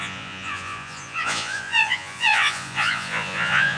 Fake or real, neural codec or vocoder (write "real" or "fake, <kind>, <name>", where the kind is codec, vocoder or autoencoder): fake, vocoder, Vocos